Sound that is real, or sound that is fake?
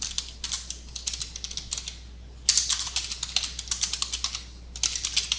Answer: real